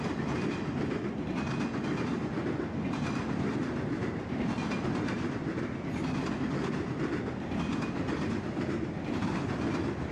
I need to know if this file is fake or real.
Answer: real